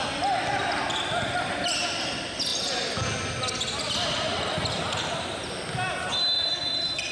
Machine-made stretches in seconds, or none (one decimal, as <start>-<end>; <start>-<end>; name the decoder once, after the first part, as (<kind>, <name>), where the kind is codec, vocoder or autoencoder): none